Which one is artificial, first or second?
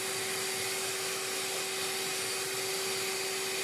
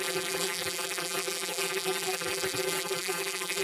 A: second